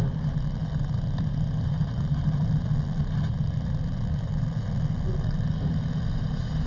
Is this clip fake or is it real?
real